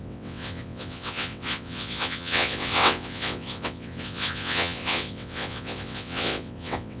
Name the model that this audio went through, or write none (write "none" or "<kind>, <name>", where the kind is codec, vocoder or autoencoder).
vocoder, WaveNeXt